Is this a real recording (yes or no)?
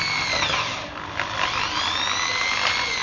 yes